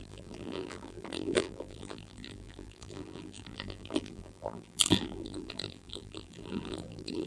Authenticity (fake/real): fake